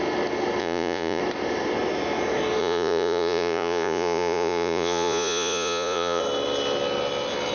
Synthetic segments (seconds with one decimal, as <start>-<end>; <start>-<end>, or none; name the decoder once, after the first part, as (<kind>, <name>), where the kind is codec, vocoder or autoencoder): 0.6-1.2 (vocoder, Vocos); 2.6-6.2